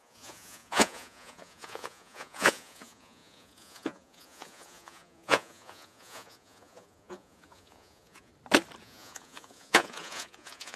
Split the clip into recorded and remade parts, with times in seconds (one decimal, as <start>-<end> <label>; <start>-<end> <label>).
0.0-8.3 remade; 8.3-8.8 recorded; 8.8-10.8 remade